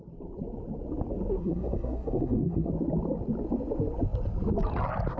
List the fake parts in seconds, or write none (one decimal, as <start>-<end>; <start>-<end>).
1.4-2.7